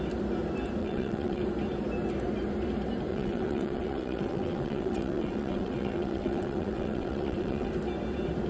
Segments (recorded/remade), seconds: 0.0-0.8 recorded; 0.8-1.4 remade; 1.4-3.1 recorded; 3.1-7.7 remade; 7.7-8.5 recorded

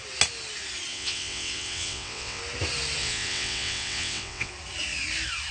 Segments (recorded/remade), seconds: 0.0-0.9 recorded; 0.9-2.4 remade; 2.4-3.0 recorded; 3.0-4.5 remade; 4.5-5.5 recorded

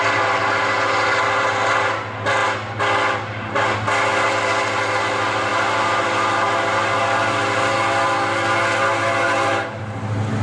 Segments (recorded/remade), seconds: 0.0-10.4 recorded

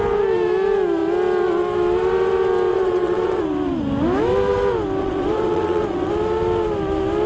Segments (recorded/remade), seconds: 0.0-2.7 recorded; 2.7-3.4 remade; 3.4-5.0 recorded; 5.0-6.1 remade; 6.1-7.3 recorded

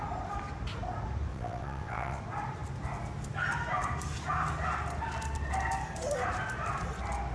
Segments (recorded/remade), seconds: 0.0-1.3 recorded; 1.3-2.2 remade; 2.2-7.3 recorded

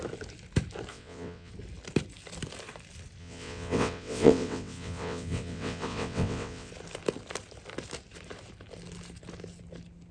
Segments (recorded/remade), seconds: 0.0-0.9 recorded; 0.9-1.5 remade; 1.5-3.2 recorded; 3.2-6.7 remade; 6.7-10.1 recorded

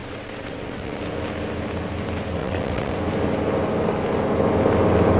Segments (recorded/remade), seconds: 0.0-1.0 remade; 1.0-2.4 recorded; 2.4-2.9 remade; 2.9-5.2 recorded